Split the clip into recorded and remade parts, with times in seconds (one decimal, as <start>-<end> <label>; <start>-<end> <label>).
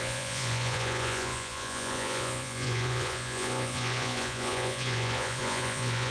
0.0-6.1 remade